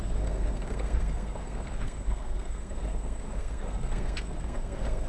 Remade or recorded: remade